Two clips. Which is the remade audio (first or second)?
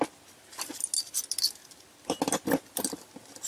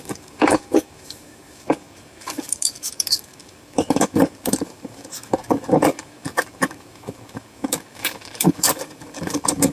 second